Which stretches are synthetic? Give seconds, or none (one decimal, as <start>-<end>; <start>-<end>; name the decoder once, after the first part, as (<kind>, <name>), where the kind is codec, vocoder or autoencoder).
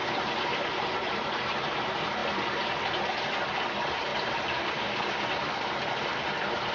0.0-6.7 (vocoder, BigVGAN v2)